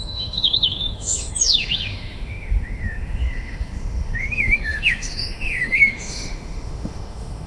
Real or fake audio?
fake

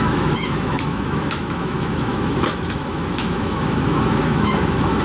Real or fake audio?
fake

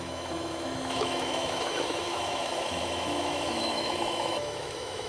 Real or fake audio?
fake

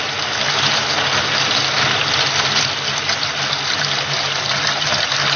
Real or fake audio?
real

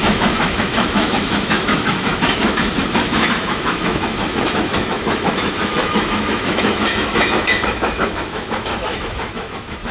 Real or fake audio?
fake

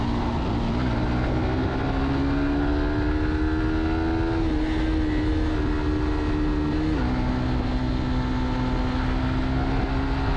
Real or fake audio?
real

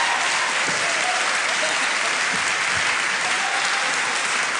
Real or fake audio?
real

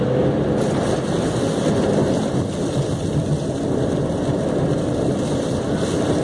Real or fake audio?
real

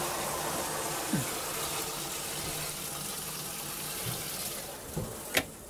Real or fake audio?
real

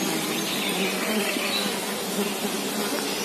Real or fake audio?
real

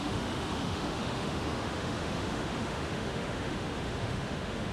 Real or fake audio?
fake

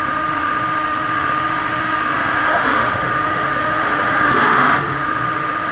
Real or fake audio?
fake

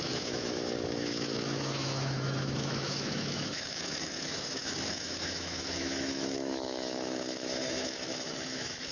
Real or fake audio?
fake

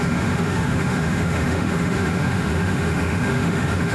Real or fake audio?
fake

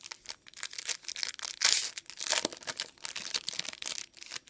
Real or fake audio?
real